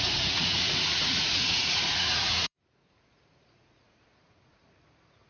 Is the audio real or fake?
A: fake